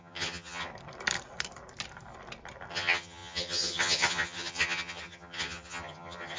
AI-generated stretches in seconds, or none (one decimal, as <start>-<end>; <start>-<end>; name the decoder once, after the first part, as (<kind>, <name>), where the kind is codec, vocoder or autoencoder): 0.0-0.7 (vocoder, HiFi-GAN); 2.7-6.4